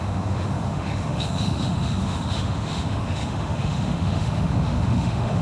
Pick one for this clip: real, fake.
fake